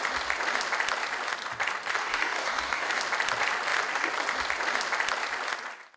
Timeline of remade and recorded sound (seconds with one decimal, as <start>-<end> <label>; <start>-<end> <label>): 0.0-2.0 recorded; 2.0-3.0 remade; 3.0-6.0 recorded